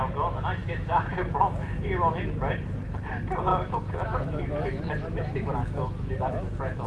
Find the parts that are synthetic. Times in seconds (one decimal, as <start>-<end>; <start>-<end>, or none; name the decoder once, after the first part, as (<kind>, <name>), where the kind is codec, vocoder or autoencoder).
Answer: 0.6-2.2 (autoencoder, DAC-VAE); 3.5-6.9